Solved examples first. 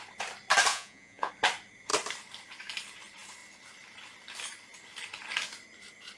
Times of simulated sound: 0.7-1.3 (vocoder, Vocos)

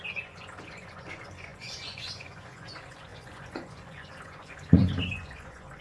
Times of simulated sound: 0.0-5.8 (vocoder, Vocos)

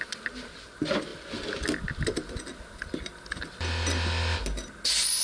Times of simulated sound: none